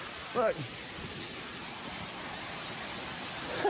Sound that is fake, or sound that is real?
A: real